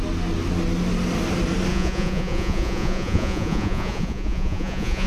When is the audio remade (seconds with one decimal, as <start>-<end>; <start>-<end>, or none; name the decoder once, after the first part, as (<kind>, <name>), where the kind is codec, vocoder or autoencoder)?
1.7-5.1 (vocoder, Vocos)